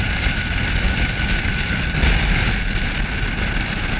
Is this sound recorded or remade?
recorded